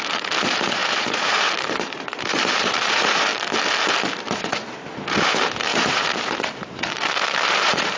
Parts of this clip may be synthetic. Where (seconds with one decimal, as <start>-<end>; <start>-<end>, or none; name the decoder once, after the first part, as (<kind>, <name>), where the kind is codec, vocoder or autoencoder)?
0.0-3.3 (vocoder, BigVGAN v2); 4.3-8.0

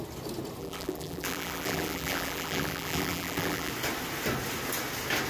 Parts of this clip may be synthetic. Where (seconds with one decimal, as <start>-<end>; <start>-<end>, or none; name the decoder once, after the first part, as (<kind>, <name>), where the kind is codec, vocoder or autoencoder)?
0.6-3.7 (vocoder, BigVGAN v2)

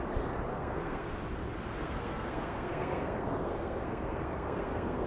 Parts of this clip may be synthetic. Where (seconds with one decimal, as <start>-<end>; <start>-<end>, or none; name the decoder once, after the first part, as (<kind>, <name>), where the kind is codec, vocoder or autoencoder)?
0.5-1.1 (codec, SNAC); 1.8-5.1